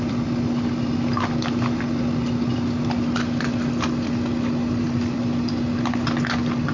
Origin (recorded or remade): recorded